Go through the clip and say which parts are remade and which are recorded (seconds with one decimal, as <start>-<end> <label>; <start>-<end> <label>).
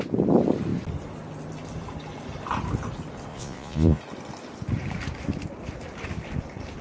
0.0-3.3 recorded; 3.3-4.0 remade; 4.0-6.8 recorded